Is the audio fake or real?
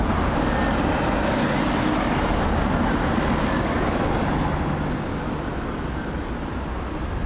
real